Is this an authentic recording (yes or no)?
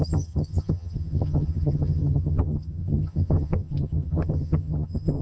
no